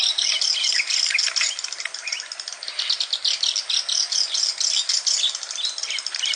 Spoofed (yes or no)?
no